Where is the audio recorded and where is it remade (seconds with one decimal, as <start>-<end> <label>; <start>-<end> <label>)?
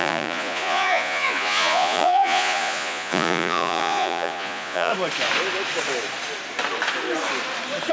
0.0-4.9 remade; 4.9-7.9 recorded